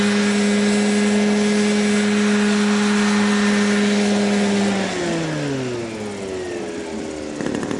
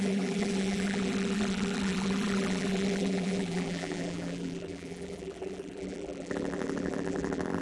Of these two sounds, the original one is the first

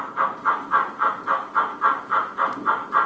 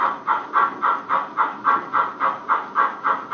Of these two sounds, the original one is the first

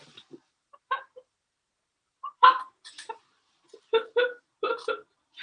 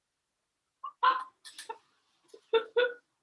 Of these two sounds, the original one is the second